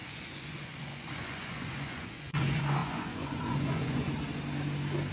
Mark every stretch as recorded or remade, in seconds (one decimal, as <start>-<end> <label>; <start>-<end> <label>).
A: 0.0-4.1 remade; 4.1-5.1 recorded